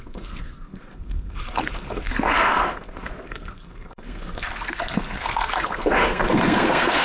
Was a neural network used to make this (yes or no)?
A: yes